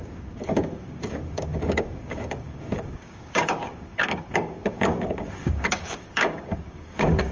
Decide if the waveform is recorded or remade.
remade